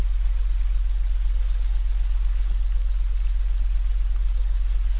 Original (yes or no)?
yes